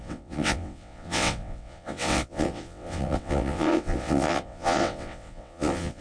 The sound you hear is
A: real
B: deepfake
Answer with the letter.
B